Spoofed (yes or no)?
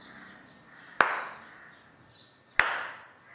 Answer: no